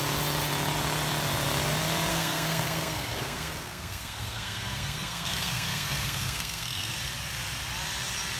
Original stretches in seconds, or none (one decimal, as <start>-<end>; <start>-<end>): 0.0-2.1; 6.9-8.4